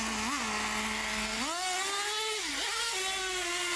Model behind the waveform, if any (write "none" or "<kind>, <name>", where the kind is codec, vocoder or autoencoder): none